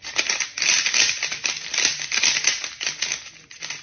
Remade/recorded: recorded